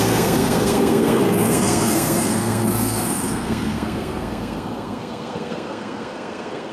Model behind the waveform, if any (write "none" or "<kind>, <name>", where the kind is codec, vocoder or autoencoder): codec, SNAC